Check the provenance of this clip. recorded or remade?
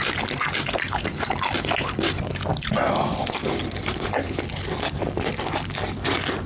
recorded